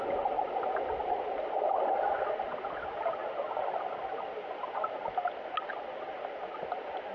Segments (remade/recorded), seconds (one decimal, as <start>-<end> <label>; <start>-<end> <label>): 0.0-7.1 recorded